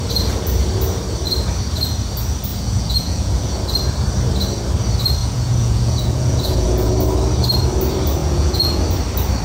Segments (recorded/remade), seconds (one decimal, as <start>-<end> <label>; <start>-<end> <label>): 0.0-2.5 recorded; 2.5-3.6 remade; 3.6-5.2 recorded; 5.2-6.9 remade; 6.9-8.2 recorded; 8.2-8.8 remade; 8.8-9.4 recorded